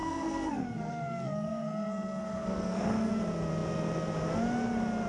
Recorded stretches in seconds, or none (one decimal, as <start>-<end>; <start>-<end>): 3.1-5.1